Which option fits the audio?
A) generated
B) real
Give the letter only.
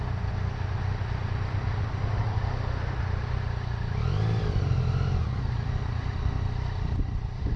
B